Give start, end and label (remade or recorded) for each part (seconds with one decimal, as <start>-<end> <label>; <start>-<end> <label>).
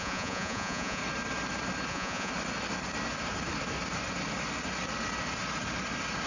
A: 0.0-1.0 remade; 1.0-1.9 recorded; 1.9-2.3 remade; 2.3-6.3 recorded